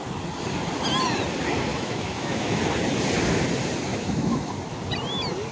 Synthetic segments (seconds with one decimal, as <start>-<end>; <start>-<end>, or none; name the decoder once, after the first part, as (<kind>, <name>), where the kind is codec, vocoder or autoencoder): 1.7-2.6 (autoencoder, DAC-VAE); 3.9-4.5